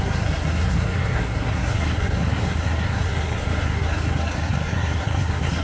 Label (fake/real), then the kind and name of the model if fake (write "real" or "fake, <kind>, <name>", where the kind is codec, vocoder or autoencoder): fake, codec, SNAC